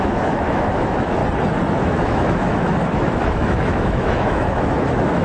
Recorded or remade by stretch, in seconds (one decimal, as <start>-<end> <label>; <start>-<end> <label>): 0.0-1.2 remade; 1.2-1.7 recorded; 1.7-5.2 remade